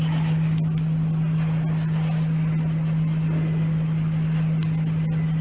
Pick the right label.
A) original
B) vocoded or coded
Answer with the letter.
A